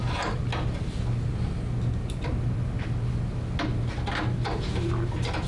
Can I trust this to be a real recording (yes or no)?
yes